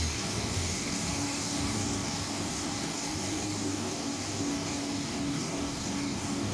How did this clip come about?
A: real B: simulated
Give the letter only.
B